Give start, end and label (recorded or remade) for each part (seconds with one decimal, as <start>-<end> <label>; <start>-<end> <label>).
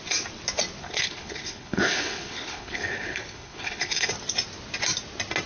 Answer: 0.0-0.8 recorded; 0.8-4.1 remade; 4.1-5.5 recorded